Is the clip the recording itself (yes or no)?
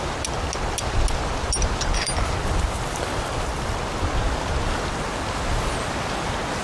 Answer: yes